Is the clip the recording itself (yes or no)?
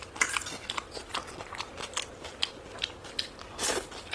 yes